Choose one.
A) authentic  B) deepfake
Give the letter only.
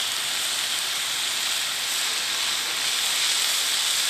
A